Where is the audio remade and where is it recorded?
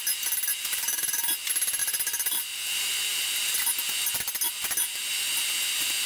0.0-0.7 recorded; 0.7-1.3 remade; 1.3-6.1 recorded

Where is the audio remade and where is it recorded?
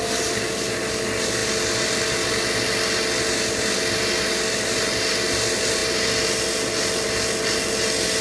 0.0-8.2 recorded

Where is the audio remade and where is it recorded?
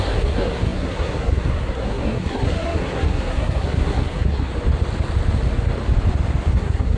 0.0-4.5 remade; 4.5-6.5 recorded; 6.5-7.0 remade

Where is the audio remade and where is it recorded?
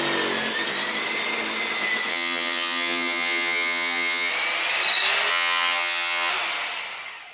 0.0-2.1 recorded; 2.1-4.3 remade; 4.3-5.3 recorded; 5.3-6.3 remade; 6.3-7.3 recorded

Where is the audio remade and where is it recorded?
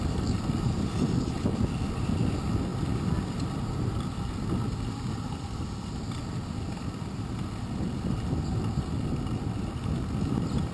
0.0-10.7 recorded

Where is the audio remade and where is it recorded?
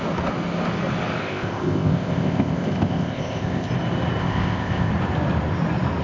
0.0-1.2 recorded; 1.2-3.7 remade; 3.7-4.2 recorded; 4.2-4.9 remade; 4.9-6.0 recorded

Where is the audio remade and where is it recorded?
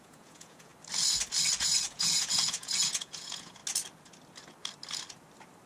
0.0-0.7 remade; 0.7-1.6 recorded; 1.6-3.6 remade; 3.6-5.7 recorded